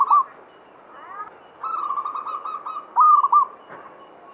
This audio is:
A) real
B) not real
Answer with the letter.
A